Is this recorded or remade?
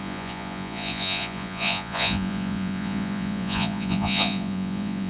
remade